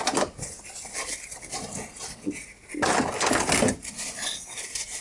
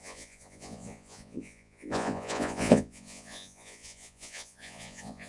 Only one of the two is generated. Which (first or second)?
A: second